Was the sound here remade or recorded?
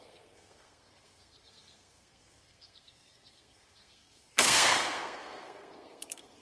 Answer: remade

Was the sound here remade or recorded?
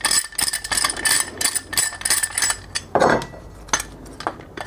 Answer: recorded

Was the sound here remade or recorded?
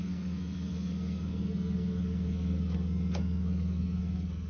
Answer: remade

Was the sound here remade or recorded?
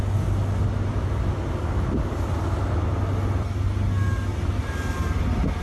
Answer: recorded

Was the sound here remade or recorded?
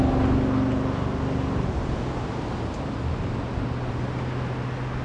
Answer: recorded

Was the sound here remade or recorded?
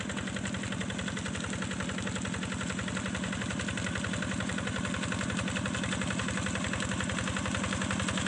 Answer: recorded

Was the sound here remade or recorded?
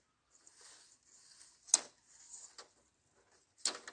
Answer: recorded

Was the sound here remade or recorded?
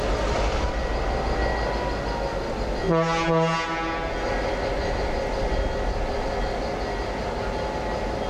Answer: recorded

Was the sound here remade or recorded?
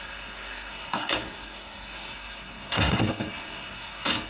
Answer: remade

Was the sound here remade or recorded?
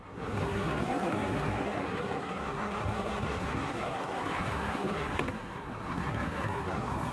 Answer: remade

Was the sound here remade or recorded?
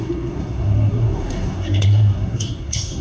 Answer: remade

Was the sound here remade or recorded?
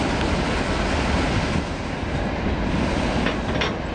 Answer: recorded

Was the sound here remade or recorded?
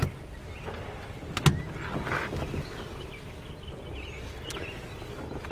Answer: recorded